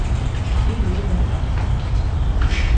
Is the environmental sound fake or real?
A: real